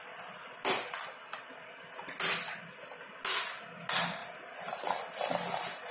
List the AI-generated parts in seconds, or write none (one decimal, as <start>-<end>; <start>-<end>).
none